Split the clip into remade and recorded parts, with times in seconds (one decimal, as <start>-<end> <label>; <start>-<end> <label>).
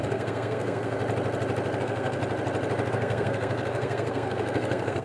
0.0-1.0 remade; 1.0-1.8 recorded; 1.8-2.2 remade; 2.2-2.9 recorded; 2.9-5.0 remade